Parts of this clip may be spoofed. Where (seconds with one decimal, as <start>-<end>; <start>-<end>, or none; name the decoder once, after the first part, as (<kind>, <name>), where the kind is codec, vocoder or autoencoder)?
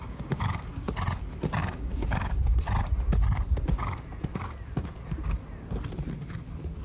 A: 0.0-0.9 (codec, DAC); 1.6-2.6